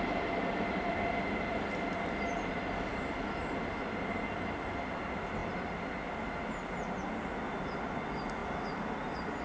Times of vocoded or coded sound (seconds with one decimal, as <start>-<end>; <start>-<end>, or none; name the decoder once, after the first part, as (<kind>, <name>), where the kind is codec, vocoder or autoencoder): none